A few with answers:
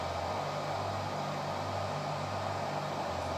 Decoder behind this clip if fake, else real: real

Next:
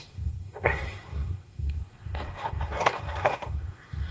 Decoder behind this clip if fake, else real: fake, codec, SNAC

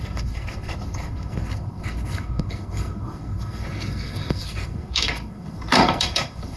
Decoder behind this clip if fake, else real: fake, codec, SNAC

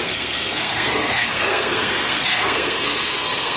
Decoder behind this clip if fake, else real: fake, codec, SNAC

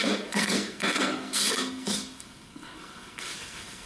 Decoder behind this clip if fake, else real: fake, codec, SNAC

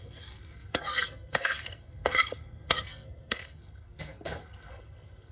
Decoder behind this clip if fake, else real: fake, codec, SNAC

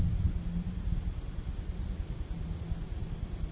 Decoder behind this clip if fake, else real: real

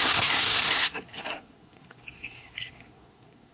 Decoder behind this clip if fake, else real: fake, codec, SNAC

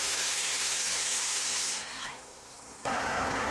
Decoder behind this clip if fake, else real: fake, codec, SNAC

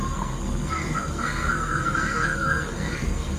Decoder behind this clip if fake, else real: fake, codec, SNAC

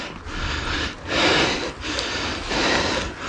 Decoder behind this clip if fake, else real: real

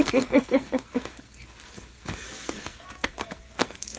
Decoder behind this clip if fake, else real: fake, codec, SNAC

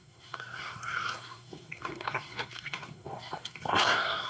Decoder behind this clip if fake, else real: fake, codec, SNAC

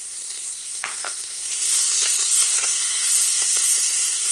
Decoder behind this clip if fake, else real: fake, codec, SNAC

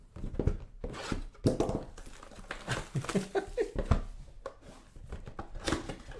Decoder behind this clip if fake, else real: real